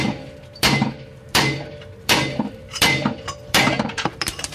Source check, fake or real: fake